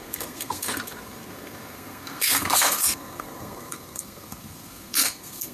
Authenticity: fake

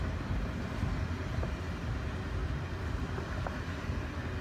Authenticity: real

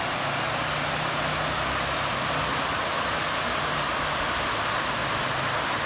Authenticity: real